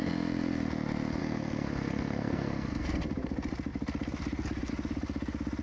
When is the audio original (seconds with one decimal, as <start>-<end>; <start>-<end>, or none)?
0.0-1.2; 3.0-5.6